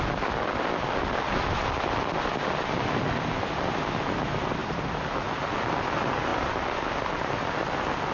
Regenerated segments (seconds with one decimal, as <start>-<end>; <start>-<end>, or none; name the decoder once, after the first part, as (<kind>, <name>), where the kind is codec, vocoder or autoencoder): 4.6-5.6 (vocoder, BigVGAN v2)